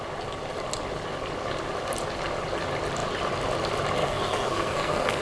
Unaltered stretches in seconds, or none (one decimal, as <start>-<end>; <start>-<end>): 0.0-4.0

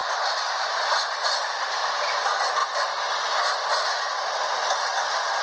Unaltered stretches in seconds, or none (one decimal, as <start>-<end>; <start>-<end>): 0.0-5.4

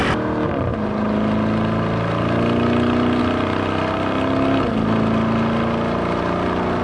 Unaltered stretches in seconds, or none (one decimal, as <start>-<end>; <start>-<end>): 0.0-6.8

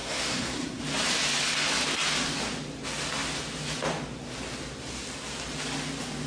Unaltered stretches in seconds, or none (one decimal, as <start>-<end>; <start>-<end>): 0.8-6.3

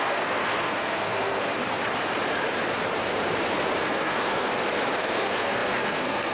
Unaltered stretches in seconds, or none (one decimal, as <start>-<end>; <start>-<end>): 1.5-3.8; 4.5-5.0

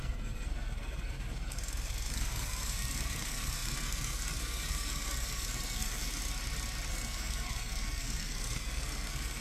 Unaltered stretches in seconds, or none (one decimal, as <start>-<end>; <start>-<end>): 6.2-6.9